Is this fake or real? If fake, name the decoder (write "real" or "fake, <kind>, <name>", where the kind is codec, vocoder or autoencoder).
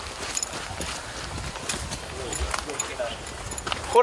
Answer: real